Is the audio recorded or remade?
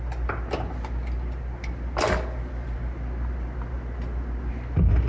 recorded